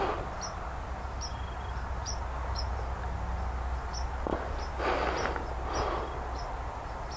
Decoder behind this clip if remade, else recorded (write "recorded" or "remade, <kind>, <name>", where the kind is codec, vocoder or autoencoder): recorded